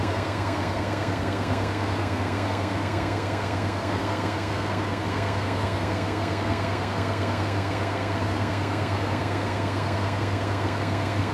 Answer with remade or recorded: remade